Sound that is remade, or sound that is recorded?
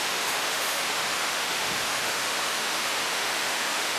remade